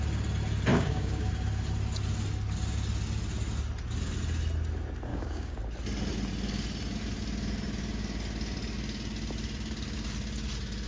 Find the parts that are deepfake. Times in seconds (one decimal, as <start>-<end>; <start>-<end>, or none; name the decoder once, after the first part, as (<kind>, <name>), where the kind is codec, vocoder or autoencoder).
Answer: 0.7-1.3 (codec, DAC); 5.1-5.6